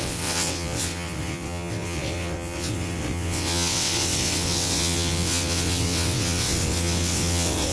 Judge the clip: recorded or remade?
remade